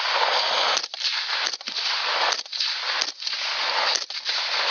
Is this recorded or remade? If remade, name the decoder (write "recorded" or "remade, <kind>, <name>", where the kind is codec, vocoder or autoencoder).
recorded